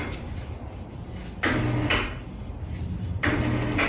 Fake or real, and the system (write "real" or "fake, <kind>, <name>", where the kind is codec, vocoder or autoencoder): real